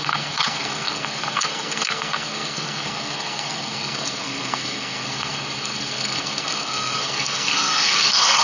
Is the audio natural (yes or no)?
no